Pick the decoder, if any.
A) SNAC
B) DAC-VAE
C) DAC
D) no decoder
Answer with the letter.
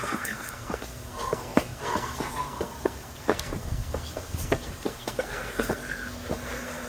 A